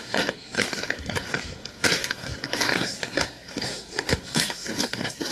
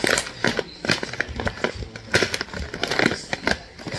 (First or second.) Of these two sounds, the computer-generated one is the first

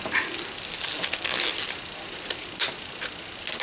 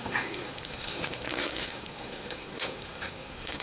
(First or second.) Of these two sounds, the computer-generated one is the second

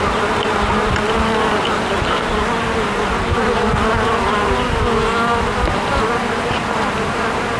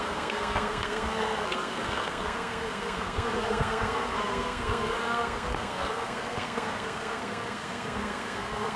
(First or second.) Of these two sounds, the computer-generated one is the second